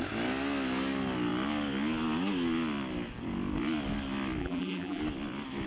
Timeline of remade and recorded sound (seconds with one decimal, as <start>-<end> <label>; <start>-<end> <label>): 0.0-4.4 recorded; 4.4-5.0 remade; 5.0-5.7 recorded